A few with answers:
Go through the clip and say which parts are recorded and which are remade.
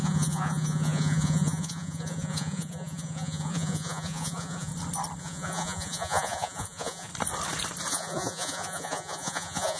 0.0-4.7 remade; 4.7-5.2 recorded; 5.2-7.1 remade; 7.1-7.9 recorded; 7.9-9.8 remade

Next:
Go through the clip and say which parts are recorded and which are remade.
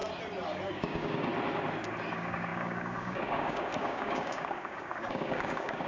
0.0-0.7 recorded; 0.7-1.3 remade; 1.3-2.1 recorded; 2.1-5.9 remade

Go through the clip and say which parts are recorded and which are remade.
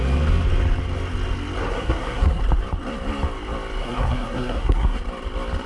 0.0-1.6 recorded; 1.6-2.4 remade; 2.4-3.8 recorded; 3.8-5.0 remade; 5.0-5.7 recorded